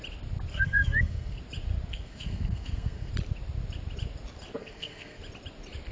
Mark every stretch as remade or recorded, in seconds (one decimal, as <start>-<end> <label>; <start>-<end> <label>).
0.0-0.5 recorded; 0.5-1.4 remade; 1.4-1.9 recorded; 1.9-3.1 remade; 3.1-4.6 recorded; 4.6-5.2 remade; 5.2-5.9 recorded